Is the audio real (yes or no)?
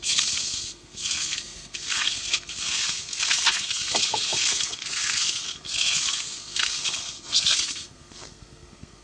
no